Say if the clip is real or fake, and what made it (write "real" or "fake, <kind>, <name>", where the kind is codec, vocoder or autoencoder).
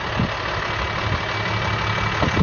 real